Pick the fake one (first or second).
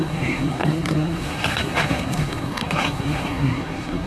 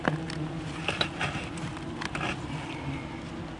first